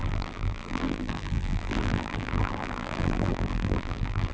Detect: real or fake fake